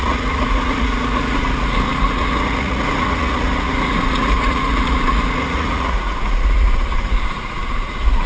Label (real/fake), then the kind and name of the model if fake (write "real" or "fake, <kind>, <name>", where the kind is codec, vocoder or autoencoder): fake, vocoder, Vocos